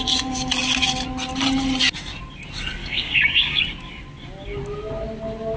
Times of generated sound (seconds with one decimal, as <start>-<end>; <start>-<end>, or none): 2.8-3.6